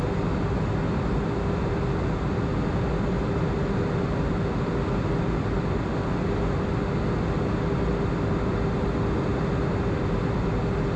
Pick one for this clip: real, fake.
real